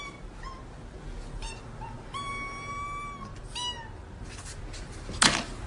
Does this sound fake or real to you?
real